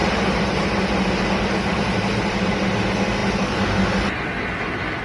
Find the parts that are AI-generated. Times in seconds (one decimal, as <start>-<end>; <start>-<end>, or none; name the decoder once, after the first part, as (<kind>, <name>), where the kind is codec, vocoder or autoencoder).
0.0-0.8 (vocoder, BigVGAN v2); 1.7-2.6